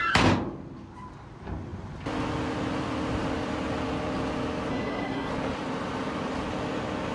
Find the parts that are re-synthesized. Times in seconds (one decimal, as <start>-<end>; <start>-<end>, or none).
4.7-5.3